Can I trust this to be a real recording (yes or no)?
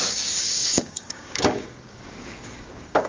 no